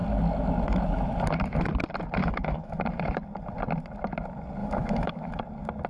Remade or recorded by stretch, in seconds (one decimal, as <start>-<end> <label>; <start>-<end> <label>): 0.0-2.2 recorded; 2.2-2.8 remade; 2.8-4.6 recorded; 4.6-5.4 remade; 5.4-5.9 recorded